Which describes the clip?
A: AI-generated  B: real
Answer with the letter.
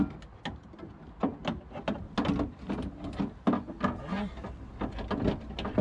B